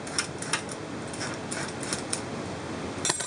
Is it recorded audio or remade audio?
recorded